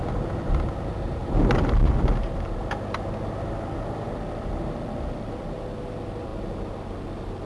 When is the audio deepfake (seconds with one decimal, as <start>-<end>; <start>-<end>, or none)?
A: none